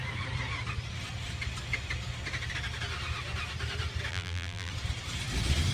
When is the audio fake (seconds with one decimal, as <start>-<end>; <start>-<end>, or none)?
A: 4.1-4.7